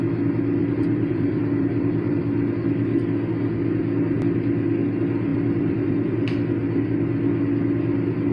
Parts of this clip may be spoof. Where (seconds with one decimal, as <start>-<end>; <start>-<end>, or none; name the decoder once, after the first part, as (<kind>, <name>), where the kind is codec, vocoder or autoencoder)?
0.6-2.2 (vocoder, BigVGAN v2); 5.3-6.1